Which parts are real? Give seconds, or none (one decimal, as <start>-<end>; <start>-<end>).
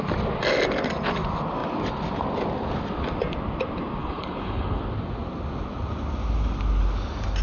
0.0-4.0; 4.8-7.4